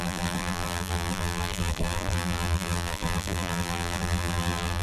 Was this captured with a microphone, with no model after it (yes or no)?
no